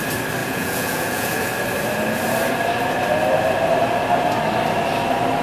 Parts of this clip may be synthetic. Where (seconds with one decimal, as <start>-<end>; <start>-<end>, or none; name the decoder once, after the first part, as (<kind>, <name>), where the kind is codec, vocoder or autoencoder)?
0.4-1.5 (vocoder, Vocos)